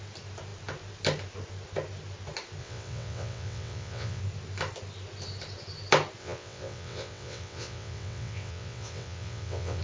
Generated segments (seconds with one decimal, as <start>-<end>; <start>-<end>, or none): 2.6-4.2; 6.2-9.8